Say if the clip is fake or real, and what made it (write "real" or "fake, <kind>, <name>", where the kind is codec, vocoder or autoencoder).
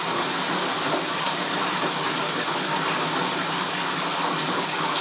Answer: real